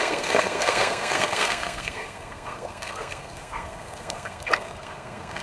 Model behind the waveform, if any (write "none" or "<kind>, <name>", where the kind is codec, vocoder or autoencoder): codec, SNAC